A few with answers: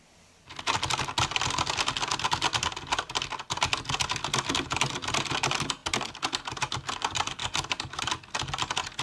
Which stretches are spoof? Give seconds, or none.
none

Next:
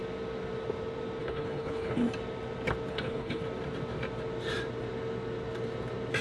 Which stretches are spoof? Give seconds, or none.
1.2-2.0 (codec, HILCodec); 2.9-3.4

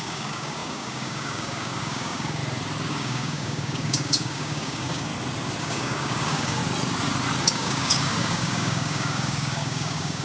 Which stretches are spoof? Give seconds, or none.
0.0-2.4 (codec, DAC); 2.9-5.1; 5.6-6.6; 7.4-10.2

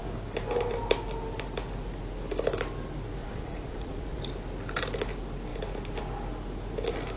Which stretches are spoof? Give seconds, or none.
3.2-4.2 (vocoder, Vocos)

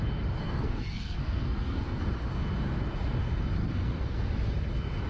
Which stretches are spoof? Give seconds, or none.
0.4-2.0 (codec, SNAC); 3.6-4.3